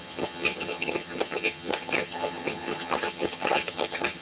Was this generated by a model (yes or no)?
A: yes